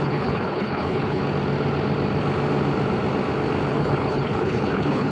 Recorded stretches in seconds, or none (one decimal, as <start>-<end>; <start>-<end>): 1.2-3.7

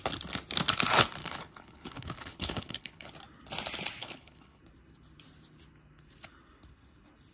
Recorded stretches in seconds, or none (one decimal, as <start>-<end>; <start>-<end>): 0.0-1.2; 3.1-4.0; 4.6-7.3